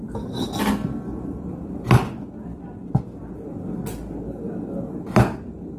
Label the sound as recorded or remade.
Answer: recorded